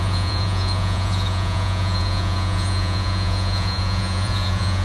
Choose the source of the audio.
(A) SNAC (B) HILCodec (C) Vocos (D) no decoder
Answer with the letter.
C